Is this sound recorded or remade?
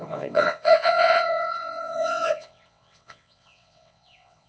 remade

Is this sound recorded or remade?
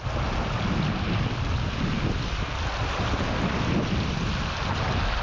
recorded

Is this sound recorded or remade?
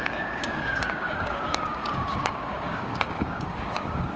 remade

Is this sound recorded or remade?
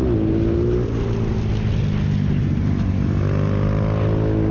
recorded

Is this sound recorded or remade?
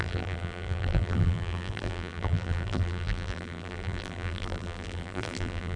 remade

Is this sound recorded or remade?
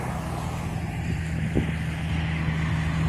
recorded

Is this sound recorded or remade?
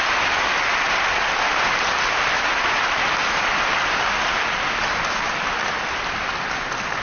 recorded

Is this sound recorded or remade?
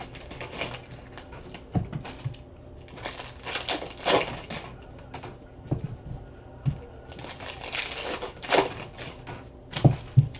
recorded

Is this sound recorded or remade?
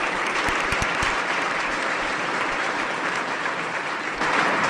remade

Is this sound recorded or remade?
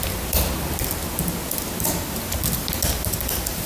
recorded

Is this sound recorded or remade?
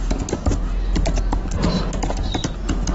recorded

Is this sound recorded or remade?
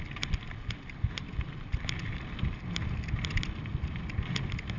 recorded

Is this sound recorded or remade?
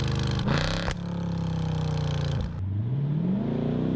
recorded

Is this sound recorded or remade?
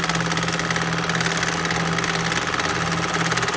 recorded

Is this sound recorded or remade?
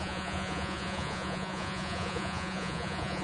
remade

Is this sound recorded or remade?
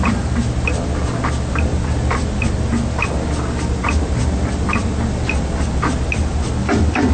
recorded